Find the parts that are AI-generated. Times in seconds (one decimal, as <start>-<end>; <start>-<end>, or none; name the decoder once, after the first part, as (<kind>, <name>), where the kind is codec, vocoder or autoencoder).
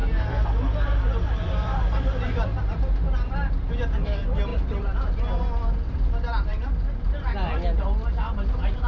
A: 0.0-3.7 (vocoder, BigVGAN v2); 6.5-7.2